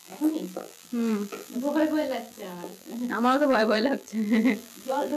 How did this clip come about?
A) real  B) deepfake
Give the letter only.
B